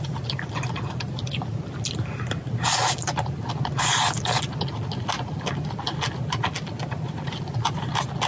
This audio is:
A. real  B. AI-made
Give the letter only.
A